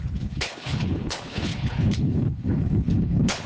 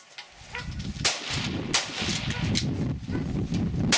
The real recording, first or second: second